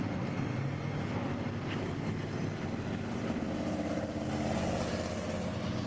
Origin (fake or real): real